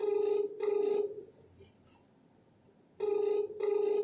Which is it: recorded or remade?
recorded